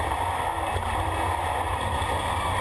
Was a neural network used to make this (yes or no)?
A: no